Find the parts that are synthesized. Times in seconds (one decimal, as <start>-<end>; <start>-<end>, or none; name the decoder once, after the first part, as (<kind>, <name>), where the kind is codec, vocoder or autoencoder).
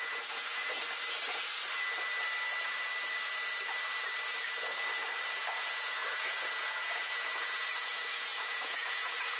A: 0.0-0.8 (vocoder, Vocos); 5.4-9.4